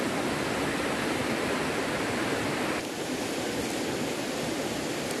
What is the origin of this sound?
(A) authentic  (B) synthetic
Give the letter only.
A